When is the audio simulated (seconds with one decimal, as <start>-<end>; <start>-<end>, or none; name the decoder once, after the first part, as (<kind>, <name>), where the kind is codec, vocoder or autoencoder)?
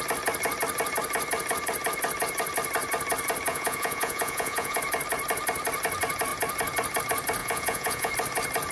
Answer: 3.5-4.8 (vocoder, Vocos); 7.4-8.1